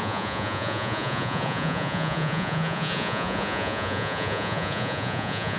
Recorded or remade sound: remade